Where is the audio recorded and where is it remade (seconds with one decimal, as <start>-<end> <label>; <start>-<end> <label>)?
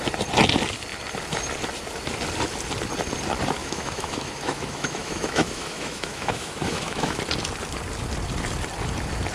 0.0-3.6 recorded; 3.6-7.2 remade; 7.2-9.3 recorded